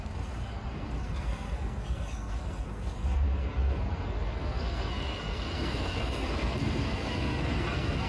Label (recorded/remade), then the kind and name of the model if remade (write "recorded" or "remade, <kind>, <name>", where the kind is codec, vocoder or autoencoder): remade, codec, SNAC